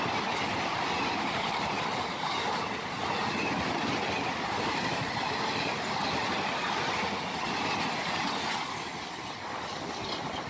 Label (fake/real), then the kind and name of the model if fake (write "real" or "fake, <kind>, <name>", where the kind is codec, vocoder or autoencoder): real